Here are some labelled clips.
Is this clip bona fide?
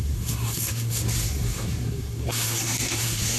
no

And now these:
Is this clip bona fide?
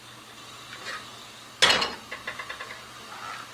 yes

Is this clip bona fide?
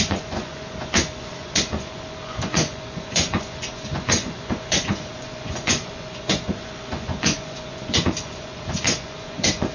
no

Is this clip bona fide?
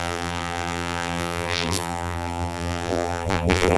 no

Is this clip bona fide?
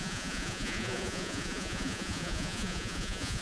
no